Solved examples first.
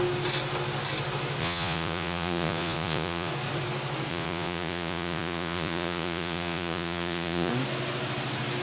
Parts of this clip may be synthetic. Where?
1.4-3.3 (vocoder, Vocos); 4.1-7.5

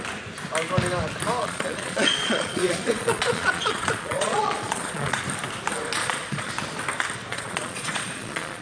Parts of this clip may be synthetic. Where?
1.4-5.2 (vocoder, Vocos); 6.0-6.5; 7.3-8.6